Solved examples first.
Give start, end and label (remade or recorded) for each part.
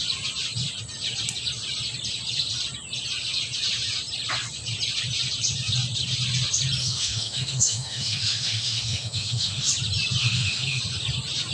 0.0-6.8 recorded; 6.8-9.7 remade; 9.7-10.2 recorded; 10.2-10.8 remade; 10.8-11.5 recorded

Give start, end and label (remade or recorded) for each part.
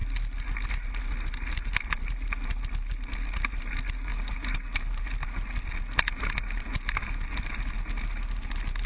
0.0-8.9 recorded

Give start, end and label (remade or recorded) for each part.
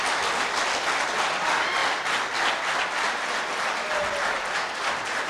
0.0-5.3 recorded